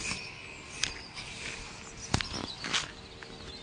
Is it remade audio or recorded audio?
recorded